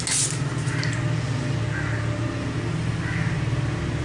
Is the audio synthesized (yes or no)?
no